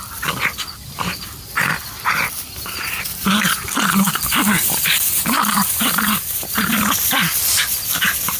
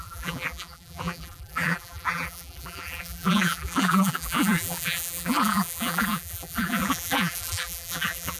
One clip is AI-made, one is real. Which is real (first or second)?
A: first